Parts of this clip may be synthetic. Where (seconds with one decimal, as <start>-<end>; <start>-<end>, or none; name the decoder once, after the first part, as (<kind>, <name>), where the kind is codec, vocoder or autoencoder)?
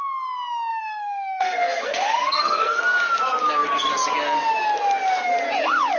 0.7-2.8 (codec, SNAC)